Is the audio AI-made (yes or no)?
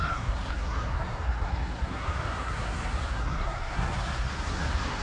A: yes